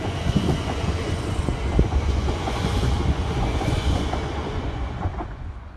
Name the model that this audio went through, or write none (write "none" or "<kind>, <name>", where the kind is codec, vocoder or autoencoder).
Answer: vocoder, Vocos